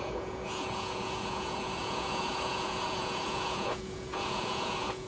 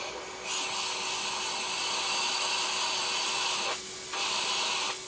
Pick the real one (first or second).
second